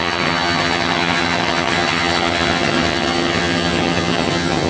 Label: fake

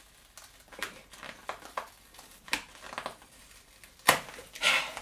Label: real